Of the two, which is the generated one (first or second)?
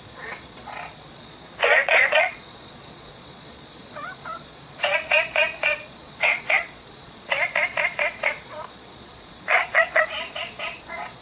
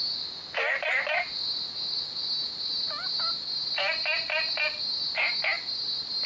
first